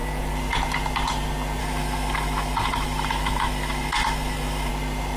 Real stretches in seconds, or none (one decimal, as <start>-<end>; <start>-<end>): 0.0-1.6; 4.7-5.2